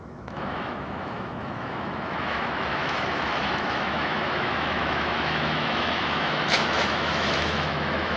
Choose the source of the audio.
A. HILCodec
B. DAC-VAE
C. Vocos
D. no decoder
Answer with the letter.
B